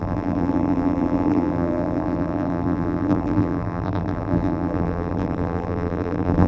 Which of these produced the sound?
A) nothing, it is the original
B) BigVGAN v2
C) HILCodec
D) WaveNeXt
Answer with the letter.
B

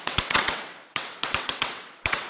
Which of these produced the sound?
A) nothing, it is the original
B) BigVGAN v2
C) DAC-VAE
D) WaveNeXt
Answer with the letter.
D